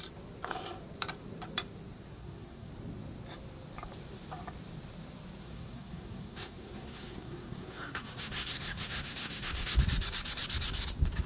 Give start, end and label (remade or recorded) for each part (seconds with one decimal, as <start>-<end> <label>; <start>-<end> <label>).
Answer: 0.0-2.2 recorded; 2.2-2.7 remade; 2.7-5.4 recorded; 5.4-9.8 remade; 9.8-11.3 recorded